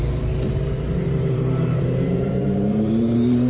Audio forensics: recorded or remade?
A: remade